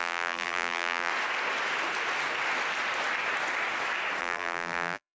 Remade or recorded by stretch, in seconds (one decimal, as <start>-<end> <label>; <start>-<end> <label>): 0.0-1.1 remade; 1.1-4.2 recorded; 4.2-5.1 remade